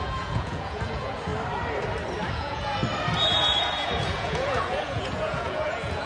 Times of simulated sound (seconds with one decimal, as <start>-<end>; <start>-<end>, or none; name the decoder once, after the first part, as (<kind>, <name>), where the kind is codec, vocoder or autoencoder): 0.0-1.3 (vocoder, Vocos); 2.3-2.8; 3.4-6.1

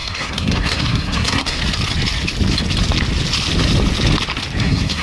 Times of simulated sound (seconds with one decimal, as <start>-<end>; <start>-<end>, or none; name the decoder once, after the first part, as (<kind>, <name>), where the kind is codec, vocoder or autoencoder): 0.0-1.6 (codec, SNAC); 4.6-5.0